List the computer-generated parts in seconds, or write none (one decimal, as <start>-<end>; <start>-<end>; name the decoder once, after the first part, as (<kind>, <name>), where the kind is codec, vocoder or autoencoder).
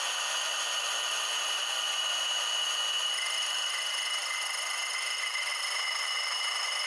none